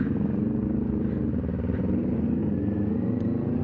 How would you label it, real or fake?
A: real